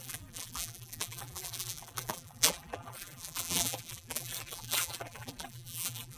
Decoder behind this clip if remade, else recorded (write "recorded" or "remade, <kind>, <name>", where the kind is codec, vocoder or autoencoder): remade, vocoder, BigVGAN v2